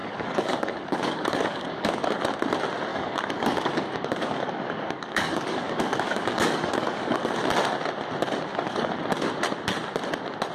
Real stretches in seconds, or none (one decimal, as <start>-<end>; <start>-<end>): 2.2-2.9; 7.2-8.5; 9.0-10.5